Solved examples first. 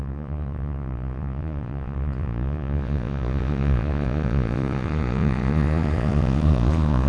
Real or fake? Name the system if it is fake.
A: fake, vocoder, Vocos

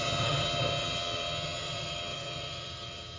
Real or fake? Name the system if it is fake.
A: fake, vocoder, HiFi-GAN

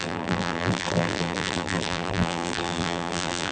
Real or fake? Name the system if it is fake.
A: fake, vocoder, BigVGAN v2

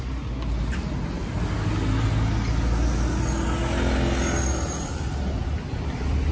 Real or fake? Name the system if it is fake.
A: real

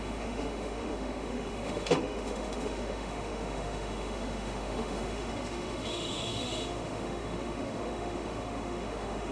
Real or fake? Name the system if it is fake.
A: fake, autoencoder, DAC-VAE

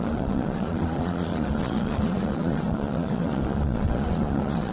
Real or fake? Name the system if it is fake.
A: fake, vocoder, Vocos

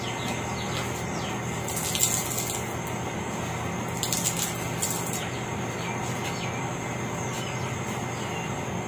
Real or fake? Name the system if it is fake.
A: real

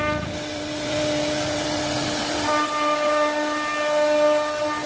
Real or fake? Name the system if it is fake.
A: real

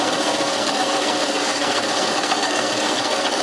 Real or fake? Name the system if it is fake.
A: fake, codec, SNAC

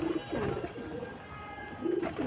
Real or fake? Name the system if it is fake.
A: real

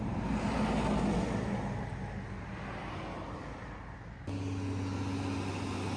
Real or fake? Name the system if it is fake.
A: real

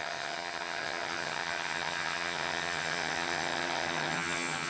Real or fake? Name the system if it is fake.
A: fake, vocoder, HiFi-GAN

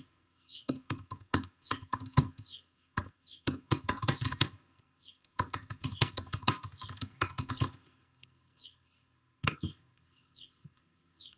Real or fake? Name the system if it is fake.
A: fake, codec, SNAC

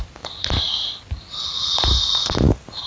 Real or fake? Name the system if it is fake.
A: real